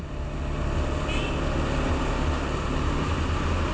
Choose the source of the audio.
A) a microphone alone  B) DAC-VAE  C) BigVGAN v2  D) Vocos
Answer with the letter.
A